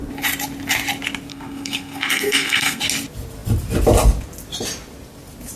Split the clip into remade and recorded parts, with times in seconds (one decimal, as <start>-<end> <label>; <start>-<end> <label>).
0.0-1.3 recorded; 1.3-2.8 remade; 2.8-5.6 recorded